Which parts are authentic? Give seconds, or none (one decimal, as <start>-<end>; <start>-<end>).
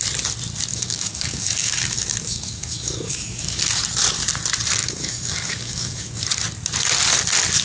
0.0-0.7; 3.6-4.8; 6.2-7.6